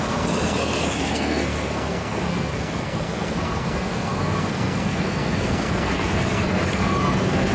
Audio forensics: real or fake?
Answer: fake